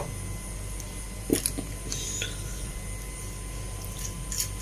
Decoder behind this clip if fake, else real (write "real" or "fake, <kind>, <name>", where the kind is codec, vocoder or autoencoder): real